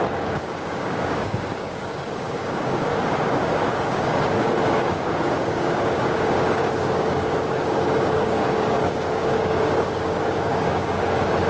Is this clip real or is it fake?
fake